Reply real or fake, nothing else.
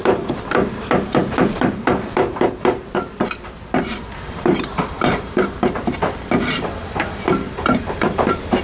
fake